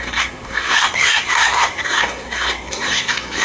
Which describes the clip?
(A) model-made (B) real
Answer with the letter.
A